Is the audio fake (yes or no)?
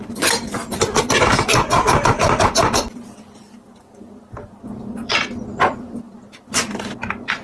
yes